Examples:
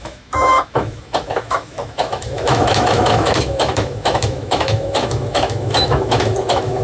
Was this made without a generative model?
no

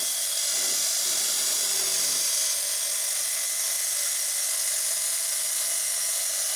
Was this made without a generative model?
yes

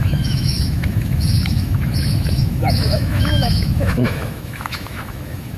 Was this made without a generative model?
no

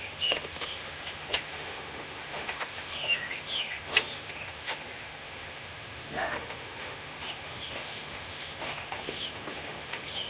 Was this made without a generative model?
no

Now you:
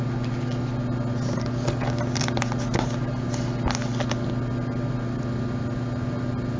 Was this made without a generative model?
yes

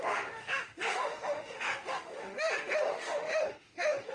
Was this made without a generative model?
no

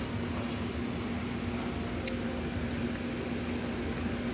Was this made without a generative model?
yes